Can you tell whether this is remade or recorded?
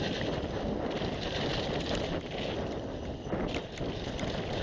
recorded